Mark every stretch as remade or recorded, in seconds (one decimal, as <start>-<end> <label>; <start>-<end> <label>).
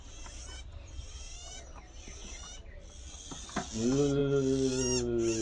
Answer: 0.0-5.4 recorded